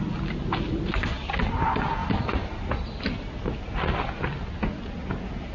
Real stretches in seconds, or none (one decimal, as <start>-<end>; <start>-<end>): 0.0-5.5